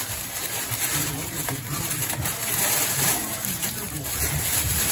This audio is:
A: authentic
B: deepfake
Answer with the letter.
B